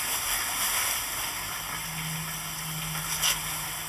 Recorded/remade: recorded